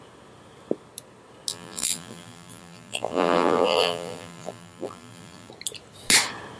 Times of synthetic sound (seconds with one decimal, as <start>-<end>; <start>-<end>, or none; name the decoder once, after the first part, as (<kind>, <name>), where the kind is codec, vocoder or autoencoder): 1.5-5.5 (vocoder, BigVGAN v2)

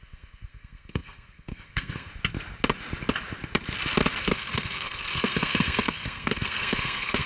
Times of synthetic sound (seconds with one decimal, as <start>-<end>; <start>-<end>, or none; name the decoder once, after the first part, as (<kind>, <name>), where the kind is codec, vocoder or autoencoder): 0.0-2.1 (codec, SNAC); 4.2-7.3

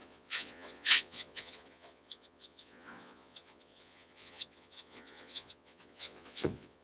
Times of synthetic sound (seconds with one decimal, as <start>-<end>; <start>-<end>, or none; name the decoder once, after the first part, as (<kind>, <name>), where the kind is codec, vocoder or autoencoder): 0.0-6.8 (vocoder, Vocos)

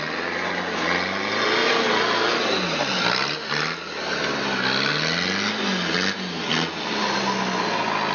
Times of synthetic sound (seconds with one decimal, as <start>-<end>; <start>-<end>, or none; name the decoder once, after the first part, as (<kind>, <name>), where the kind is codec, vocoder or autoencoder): none

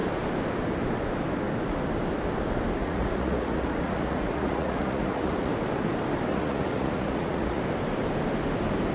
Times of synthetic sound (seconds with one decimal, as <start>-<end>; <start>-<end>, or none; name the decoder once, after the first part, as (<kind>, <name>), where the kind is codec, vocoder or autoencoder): 2.8-5.5 (vocoder, Vocos); 6.3-7.6